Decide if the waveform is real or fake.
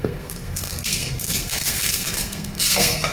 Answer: fake